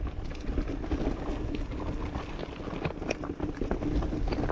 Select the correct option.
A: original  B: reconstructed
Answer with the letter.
A